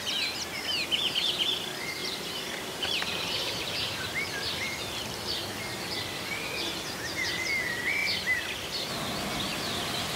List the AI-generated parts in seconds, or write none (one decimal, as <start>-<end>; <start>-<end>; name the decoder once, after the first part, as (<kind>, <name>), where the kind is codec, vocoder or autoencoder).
2.0-3.9 (vocoder, BigVGAN v2)